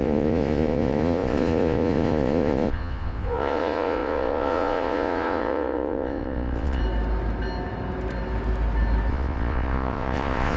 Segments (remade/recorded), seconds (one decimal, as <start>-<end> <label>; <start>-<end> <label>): 0.0-6.8 remade; 6.8-9.1 recorded; 9.1-10.6 remade